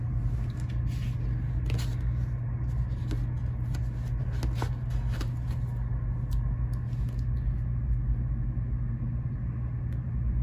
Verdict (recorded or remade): recorded